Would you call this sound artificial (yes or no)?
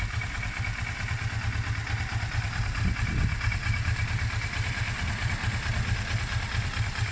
no